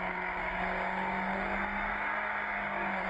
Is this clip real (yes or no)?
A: no